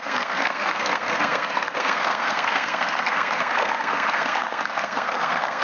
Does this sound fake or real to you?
fake